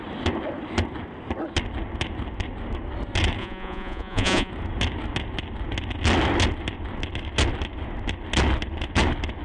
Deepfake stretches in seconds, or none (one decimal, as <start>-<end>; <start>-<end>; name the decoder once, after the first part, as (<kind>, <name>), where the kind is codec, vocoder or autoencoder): 3.4-4.5 (vocoder, Vocos)